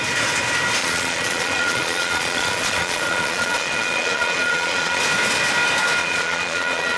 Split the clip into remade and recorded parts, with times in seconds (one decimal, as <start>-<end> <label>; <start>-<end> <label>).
0.0-0.8 recorded; 0.8-5.0 remade; 5.0-6.0 recorded; 6.0-7.0 remade